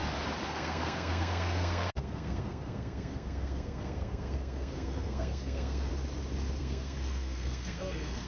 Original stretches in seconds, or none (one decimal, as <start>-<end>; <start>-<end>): 0.0-0.5; 5.9-6.6